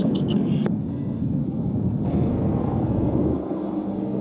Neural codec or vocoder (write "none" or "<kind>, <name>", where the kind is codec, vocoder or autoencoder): codec, SNAC